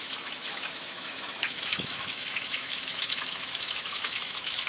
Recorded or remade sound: remade